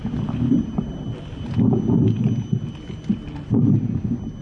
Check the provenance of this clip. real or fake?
real